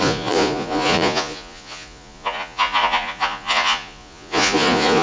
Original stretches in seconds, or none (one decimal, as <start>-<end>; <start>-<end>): none